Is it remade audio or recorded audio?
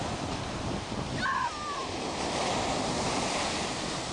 recorded